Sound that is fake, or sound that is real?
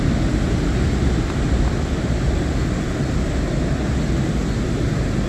real